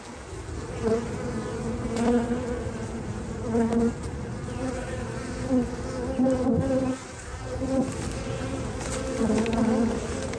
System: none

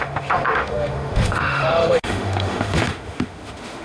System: autoencoder, DAC-VAE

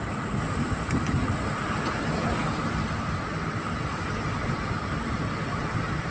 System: none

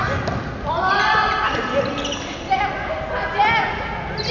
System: none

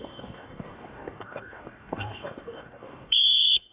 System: codec, DAC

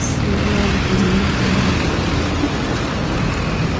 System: none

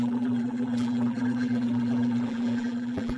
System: vocoder, BigVGAN v2